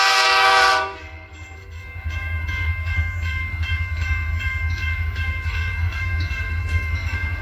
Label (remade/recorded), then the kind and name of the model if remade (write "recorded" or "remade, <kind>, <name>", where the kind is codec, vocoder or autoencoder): remade, codec, SNAC